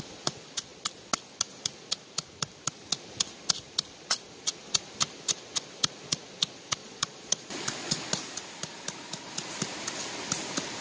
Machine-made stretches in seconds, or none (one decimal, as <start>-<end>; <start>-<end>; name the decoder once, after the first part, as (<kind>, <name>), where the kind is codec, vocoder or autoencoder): 6.8-8.0 (vocoder, Vocos)